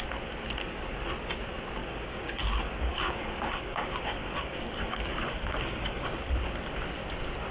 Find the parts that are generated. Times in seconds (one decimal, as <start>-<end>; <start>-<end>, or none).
1.8-6.3

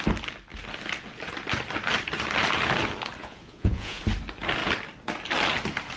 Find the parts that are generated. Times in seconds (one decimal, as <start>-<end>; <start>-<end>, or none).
3.2-4.0

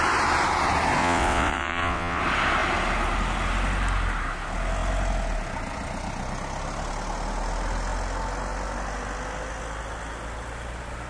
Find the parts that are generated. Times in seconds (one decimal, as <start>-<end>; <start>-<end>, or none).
1.0-2.2